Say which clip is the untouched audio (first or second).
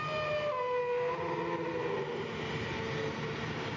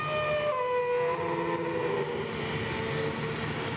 second